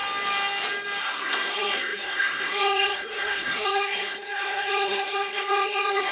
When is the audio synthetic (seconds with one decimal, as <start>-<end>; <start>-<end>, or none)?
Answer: 1.0-6.1